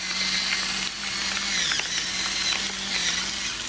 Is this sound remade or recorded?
recorded